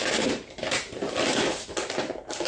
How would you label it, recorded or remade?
remade